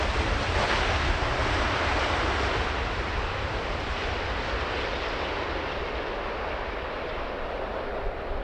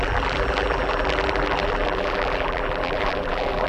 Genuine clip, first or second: first